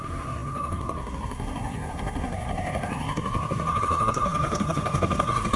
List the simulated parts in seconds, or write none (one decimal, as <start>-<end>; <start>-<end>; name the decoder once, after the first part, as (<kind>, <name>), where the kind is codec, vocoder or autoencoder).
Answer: 0.0-5.6 (codec, SNAC)